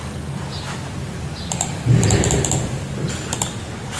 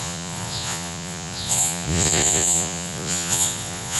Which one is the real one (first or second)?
first